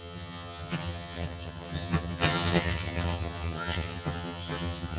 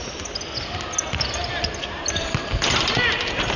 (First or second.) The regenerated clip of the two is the first